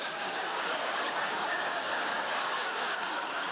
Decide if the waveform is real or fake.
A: fake